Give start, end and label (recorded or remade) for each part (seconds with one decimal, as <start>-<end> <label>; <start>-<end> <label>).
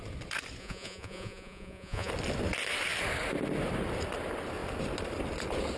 0.0-0.6 recorded; 0.6-2.1 remade; 2.1-5.8 recorded